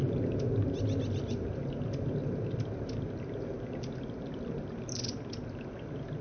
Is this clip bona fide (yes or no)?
yes